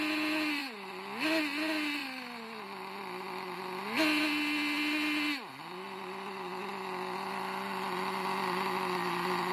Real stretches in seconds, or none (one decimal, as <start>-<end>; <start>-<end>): 0.0-9.5